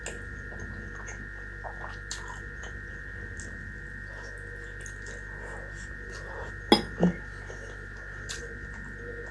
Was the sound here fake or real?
real